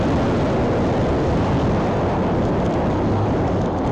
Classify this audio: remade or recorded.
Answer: recorded